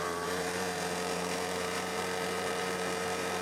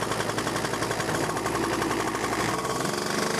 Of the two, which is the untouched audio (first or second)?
second